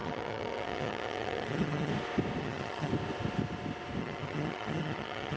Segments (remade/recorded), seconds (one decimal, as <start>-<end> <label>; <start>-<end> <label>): 0.0-1.9 remade; 1.9-2.4 recorded; 2.4-2.9 remade; 2.9-4.0 recorded; 4.0-5.4 remade